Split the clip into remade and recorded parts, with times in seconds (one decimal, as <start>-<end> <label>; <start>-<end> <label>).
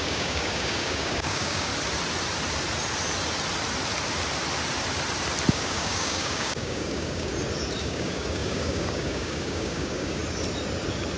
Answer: 0.0-1.7 remade; 1.7-5.5 recorded; 5.5-7.3 remade; 7.3-7.8 recorded; 7.8-10.2 remade; 10.2-11.2 recorded